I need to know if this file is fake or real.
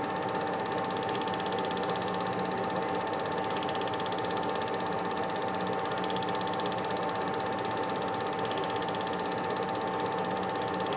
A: real